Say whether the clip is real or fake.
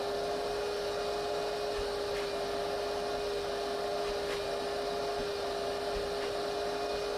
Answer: real